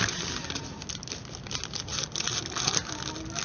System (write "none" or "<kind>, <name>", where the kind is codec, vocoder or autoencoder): none